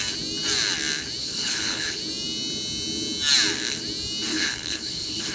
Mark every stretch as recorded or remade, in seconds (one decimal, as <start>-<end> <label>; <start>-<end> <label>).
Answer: 0.0-1.2 recorded; 1.2-2.0 remade; 2.0-4.3 recorded; 4.3-5.3 remade